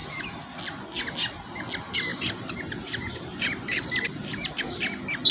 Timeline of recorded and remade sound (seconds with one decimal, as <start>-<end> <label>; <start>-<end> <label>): 0.0-2.1 recorded; 2.1-4.6 remade; 4.6-5.3 recorded